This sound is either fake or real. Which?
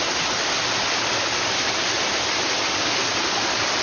real